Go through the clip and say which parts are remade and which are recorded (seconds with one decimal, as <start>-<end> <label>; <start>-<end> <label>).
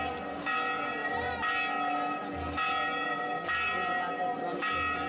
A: 0.0-5.1 recorded